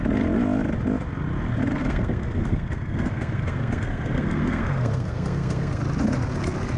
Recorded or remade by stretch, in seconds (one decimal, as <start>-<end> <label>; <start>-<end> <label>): 0.0-1.7 recorded; 1.7-5.8 remade; 5.8-6.8 recorded